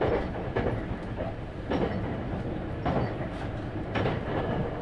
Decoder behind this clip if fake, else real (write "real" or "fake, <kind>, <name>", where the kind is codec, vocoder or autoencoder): real